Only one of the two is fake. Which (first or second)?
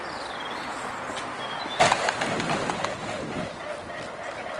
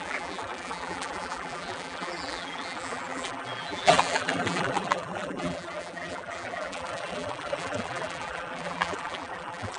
second